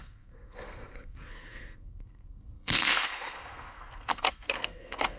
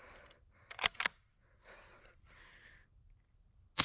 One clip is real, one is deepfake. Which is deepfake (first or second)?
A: first